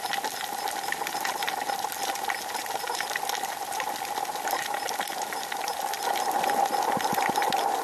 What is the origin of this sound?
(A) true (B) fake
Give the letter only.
A